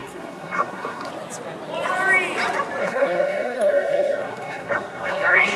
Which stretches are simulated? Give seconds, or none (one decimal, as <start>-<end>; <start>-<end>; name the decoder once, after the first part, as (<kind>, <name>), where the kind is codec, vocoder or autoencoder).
0.0-1.1 (codec, SNAC); 2.8-5.6